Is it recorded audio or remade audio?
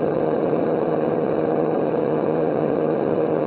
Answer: remade